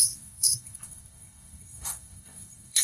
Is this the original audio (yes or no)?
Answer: no